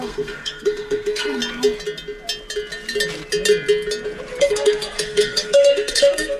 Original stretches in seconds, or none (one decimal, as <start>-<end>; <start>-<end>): 1.4-4.4